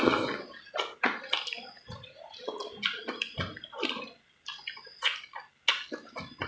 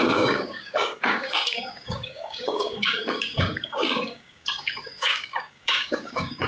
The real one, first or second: first